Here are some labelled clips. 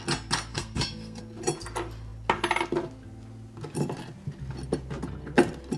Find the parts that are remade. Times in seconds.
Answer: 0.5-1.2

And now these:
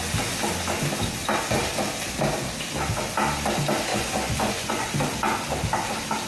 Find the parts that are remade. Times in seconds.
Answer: 3.9-4.9

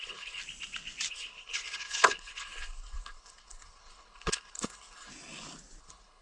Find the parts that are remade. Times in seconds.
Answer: 0.0-0.4; 1.1-5.1; 5.8-6.2